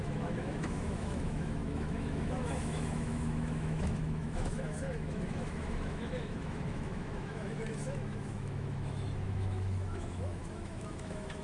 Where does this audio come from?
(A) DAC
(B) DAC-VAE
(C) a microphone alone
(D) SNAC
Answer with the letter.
B